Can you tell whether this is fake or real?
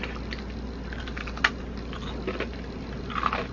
real